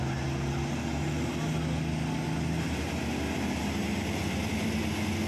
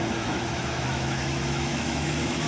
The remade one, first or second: second